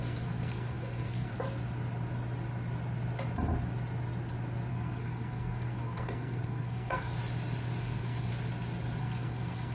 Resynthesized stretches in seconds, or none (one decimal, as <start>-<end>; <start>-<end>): 0.0-1.3; 4.7-7.2; 7.8-8.3; 9.0-9.7